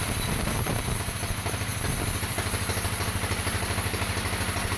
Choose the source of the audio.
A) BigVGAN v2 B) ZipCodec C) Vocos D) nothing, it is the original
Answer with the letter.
D